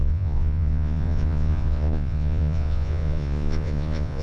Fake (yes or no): yes